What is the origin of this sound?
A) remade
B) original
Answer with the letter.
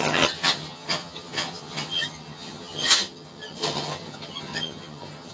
A